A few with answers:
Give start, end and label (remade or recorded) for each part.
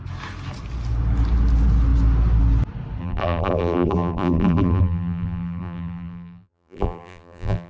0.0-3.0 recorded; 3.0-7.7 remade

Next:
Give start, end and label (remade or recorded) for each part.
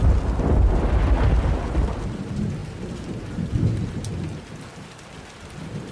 0.0-5.9 recorded